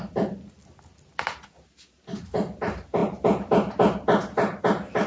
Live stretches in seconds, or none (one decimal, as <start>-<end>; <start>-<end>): 0.0-5.1